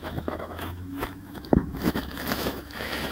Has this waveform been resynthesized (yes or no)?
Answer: yes